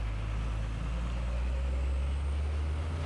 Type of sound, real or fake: real